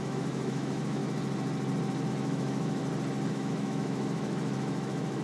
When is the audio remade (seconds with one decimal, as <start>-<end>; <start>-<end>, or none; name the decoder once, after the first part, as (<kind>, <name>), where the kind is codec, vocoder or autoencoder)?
0.0-1.0 (autoencoder, DAC-VAE); 2.1-2.8; 3.3-5.2